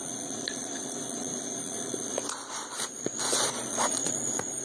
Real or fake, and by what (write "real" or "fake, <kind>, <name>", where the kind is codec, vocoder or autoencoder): fake, vocoder, Vocos